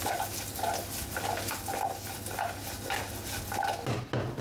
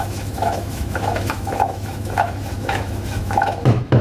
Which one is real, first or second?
first